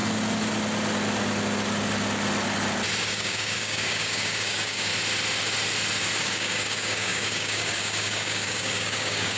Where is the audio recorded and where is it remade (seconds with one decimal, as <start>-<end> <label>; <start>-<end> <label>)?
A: 0.0-3.0 recorded; 3.0-4.9 remade; 4.9-6.2 recorded; 6.2-9.4 remade